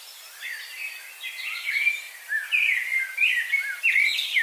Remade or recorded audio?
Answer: recorded